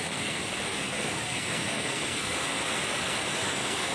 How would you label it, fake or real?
fake